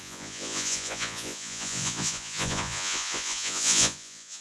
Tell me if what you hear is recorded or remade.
remade